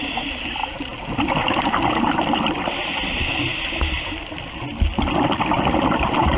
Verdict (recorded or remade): recorded